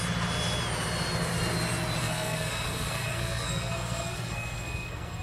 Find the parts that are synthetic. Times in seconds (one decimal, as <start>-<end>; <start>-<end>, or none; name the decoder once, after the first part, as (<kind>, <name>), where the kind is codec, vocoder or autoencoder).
2.0-5.2 (codec, SNAC)